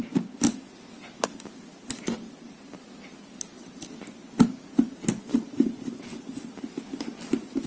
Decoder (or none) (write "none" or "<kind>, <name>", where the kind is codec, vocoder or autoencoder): none